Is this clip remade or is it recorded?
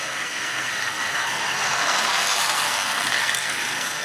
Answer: remade